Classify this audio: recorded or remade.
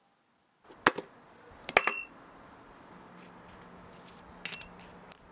recorded